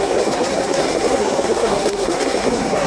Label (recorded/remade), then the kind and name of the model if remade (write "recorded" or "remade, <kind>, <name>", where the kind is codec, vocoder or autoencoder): remade, codec, SNAC